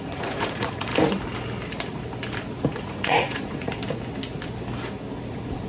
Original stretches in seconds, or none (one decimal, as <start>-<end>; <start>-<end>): 0.9-2.8; 3.8-5.3

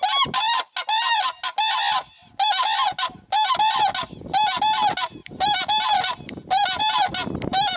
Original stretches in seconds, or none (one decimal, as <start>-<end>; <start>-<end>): 0.0-5.2; 6.8-7.8